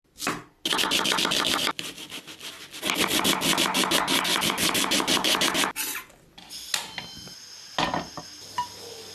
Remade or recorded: recorded